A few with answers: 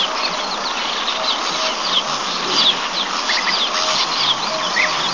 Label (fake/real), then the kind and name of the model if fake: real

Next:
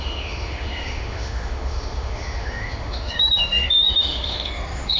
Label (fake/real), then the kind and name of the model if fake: fake, autoencoder, DAC-VAE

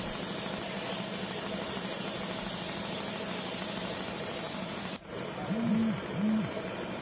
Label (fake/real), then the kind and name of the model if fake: real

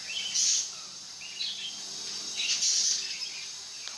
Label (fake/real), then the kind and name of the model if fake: real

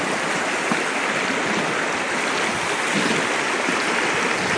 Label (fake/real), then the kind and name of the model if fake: real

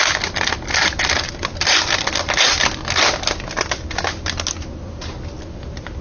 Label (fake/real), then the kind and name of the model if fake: real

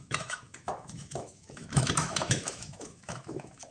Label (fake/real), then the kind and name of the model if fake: fake, autoencoder, DAC-VAE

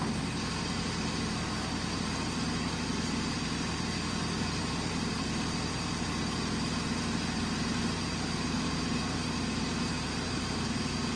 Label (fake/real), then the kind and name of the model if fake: real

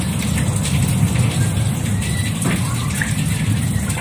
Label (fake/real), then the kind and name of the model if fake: real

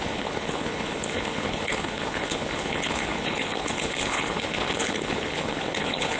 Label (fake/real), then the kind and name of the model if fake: fake, codec, HILCodec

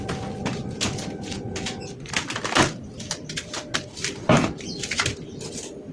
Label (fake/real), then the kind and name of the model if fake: real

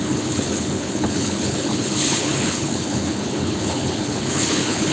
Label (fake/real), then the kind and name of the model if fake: fake, codec, HILCodec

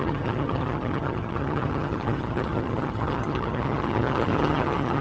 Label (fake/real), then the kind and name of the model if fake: fake, vocoder, HiFi-GAN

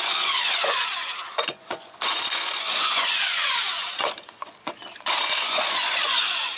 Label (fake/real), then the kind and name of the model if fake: fake, vocoder, Vocos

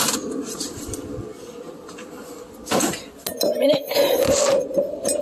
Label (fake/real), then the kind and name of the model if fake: real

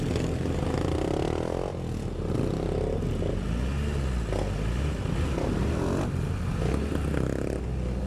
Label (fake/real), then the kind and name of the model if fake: real